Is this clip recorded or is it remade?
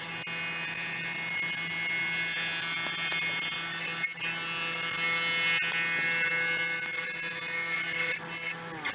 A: recorded